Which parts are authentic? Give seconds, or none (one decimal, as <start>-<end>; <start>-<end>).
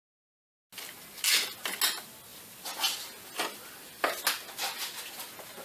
0.0-5.6